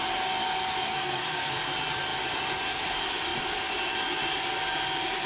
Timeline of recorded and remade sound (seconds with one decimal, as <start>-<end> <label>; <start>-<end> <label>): 0.0-0.9 recorded; 0.9-1.5 remade; 1.5-5.3 recorded